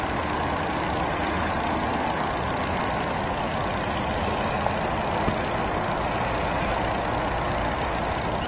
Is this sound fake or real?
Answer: real